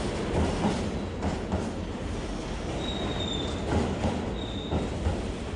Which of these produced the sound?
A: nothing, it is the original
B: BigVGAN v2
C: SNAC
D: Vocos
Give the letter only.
A